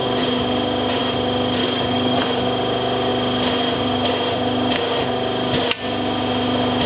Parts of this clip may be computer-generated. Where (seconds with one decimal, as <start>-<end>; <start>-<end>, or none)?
1.6-2.2